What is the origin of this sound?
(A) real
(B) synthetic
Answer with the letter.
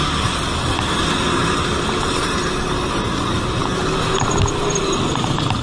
A